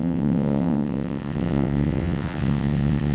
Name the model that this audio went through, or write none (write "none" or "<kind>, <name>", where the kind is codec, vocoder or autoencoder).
vocoder, WaveNeXt